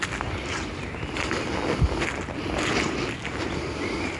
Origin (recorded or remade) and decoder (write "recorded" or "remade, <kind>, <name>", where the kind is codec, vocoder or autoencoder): recorded